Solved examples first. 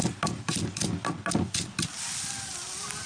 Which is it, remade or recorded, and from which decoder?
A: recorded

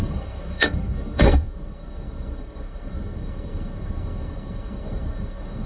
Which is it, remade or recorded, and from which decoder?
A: remade, codec, SNAC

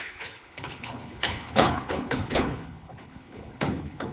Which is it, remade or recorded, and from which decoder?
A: remade, codec, HILCodec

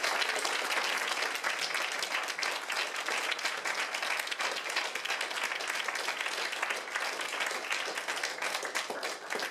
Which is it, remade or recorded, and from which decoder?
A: recorded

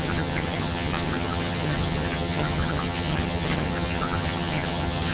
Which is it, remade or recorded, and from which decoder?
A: remade, vocoder, HiFi-GAN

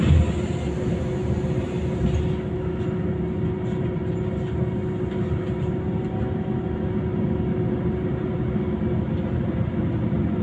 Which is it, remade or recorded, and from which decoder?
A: recorded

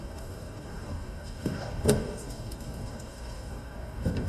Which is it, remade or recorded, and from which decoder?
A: remade, codec, DAC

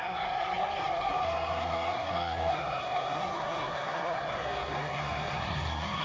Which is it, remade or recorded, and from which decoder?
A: remade, codec, SNAC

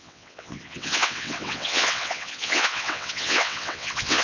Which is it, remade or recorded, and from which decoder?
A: remade, vocoder, WaveNeXt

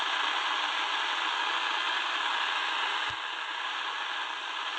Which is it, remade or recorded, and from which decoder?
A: recorded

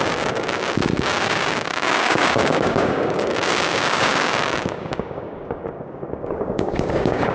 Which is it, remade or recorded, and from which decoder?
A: remade, codec, DAC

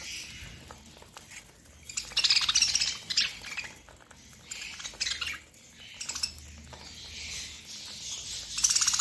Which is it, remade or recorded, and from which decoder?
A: recorded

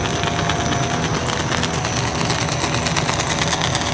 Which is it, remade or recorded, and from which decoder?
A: recorded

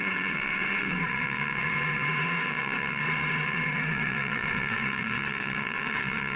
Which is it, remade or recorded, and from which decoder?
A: remade, vocoder, WaveNeXt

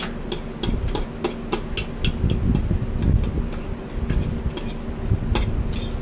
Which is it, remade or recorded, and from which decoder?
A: recorded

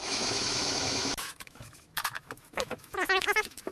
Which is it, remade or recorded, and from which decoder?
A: remade, autoencoder, DAC-VAE